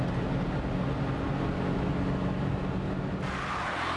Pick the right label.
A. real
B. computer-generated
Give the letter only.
A